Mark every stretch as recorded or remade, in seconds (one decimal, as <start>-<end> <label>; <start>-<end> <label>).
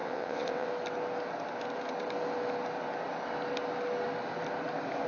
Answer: 0.0-0.7 remade; 0.7-5.1 recorded